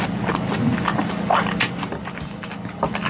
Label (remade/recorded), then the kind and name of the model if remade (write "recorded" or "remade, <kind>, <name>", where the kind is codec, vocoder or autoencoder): recorded